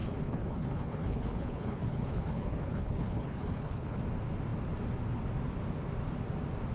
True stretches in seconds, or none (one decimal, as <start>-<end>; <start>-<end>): 4.0-6.7